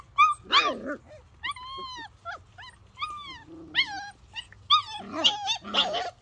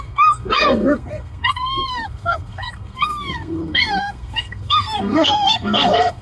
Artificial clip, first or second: second